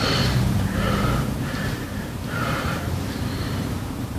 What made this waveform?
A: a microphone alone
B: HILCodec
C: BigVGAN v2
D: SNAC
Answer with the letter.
C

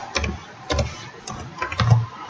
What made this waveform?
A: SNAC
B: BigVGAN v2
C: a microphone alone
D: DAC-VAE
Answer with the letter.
C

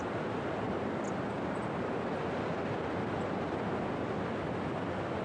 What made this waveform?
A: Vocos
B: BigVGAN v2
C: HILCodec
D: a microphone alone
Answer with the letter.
B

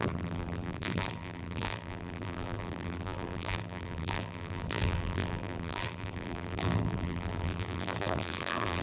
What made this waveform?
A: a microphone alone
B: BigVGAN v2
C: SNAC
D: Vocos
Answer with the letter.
B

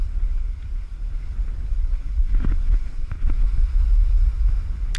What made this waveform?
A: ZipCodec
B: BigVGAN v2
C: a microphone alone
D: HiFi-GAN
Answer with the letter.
C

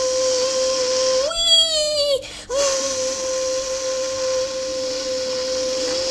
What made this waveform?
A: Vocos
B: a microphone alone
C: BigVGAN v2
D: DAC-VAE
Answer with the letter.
B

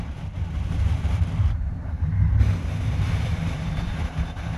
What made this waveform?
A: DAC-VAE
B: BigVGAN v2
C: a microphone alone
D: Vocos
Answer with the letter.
B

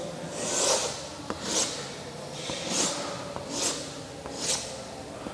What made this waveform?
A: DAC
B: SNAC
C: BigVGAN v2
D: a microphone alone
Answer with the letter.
D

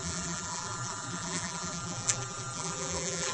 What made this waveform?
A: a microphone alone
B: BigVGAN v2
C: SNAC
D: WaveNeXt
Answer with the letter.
B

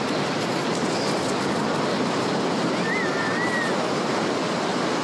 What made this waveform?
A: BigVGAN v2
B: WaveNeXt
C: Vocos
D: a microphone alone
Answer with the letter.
D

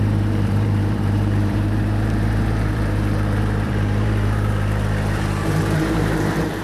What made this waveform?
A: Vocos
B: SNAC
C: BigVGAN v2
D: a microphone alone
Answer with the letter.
C